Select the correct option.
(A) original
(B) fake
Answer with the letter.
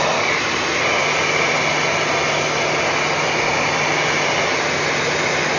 A